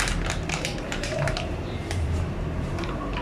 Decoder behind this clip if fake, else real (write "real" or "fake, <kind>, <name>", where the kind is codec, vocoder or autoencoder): fake, vocoder, BigVGAN v2